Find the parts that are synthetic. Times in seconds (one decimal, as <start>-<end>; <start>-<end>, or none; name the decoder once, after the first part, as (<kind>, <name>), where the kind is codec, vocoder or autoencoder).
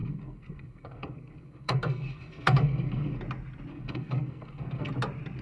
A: 0.0-3.2 (codec, SNAC); 3.7-4.9